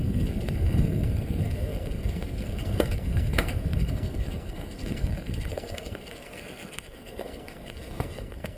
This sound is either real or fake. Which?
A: fake